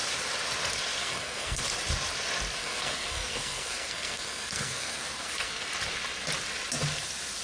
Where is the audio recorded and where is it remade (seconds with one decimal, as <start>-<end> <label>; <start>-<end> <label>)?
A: 0.0-1.0 recorded; 1.0-1.6 remade; 1.6-2.6 recorded; 2.6-5.7 remade; 5.7-7.4 recorded